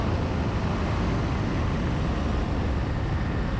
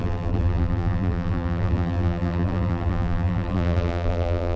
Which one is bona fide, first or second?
first